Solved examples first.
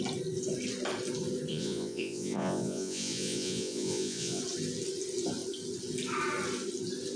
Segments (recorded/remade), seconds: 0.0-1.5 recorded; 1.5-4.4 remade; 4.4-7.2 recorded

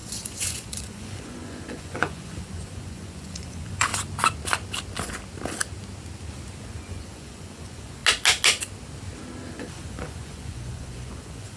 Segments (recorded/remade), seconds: 0.0-3.9 remade; 3.9-6.6 recorded; 6.6-8.0 remade; 8.0-9.5 recorded; 9.5-11.6 remade

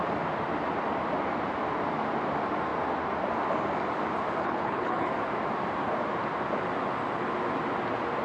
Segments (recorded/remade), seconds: 0.0-4.4 recorded; 4.4-5.1 remade; 5.1-8.2 recorded

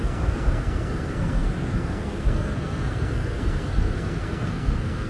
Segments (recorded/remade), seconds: 0.0-5.1 remade

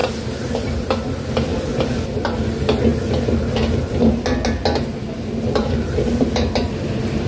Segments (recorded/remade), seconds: 0.0-5.6 recorded; 5.6-6.7 remade; 6.7-7.3 recorded

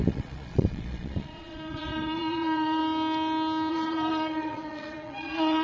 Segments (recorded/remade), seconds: 0.0-2.8 remade; 2.8-3.7 recorded; 3.7-5.6 remade

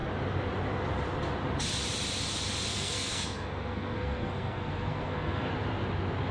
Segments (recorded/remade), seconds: 0.0-2.7 recorded; 2.7-5.5 remade; 5.5-6.3 recorded